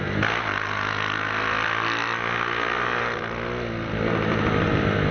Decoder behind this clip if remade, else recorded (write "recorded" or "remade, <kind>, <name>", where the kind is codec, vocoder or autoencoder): recorded